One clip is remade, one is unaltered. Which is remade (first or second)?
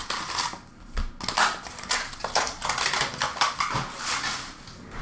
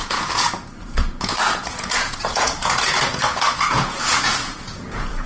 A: second